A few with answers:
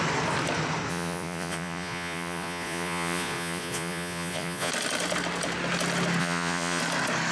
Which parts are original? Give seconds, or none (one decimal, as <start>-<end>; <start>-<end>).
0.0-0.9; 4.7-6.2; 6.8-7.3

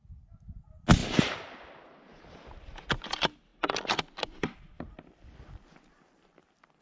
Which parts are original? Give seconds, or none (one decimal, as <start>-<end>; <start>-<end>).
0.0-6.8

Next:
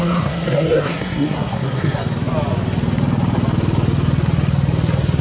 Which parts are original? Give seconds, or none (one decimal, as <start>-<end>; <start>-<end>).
2.0-5.2

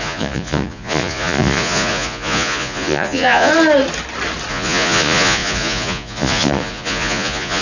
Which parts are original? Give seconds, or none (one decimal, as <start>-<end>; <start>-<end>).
3.5-4.5

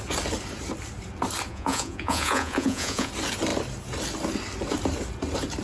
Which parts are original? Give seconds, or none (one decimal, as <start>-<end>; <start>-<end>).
0.0-1.5; 3.1-5.6

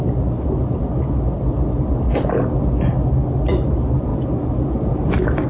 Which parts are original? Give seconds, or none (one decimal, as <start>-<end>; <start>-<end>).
0.0-5.5

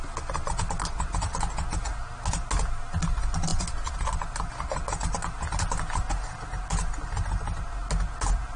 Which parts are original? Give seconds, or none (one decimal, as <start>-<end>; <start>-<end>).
0.0-8.6

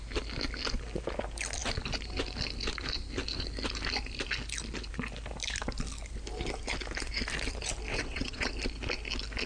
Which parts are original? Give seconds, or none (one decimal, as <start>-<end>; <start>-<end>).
0.0-7.9; 8.5-9.5